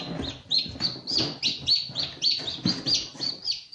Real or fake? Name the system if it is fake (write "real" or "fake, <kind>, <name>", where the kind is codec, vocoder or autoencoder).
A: real